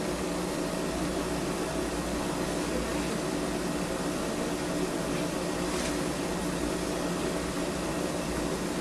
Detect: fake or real real